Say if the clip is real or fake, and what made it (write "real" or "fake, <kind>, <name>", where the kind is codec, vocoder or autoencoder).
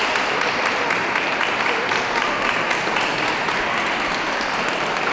real